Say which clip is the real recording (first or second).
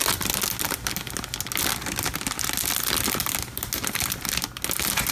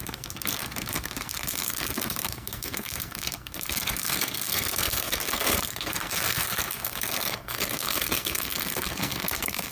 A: first